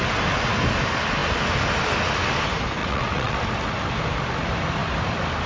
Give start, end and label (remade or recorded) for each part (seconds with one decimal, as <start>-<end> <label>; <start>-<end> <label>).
0.0-2.8 recorded; 2.8-3.4 remade; 3.4-5.5 recorded